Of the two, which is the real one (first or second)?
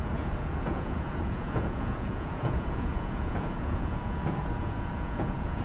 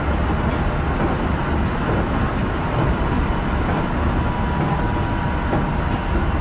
second